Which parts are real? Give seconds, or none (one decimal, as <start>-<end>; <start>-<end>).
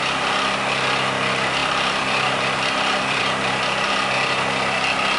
0.0-1.6; 3.2-5.2